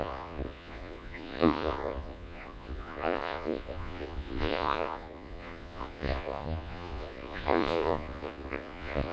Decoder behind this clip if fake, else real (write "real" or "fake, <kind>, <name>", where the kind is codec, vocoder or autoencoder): fake, vocoder, Vocos